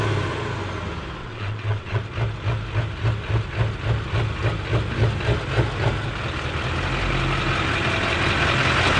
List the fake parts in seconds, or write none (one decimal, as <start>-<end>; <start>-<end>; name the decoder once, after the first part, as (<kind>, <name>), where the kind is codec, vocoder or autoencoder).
1.2-2.0 (vocoder, WaveNeXt)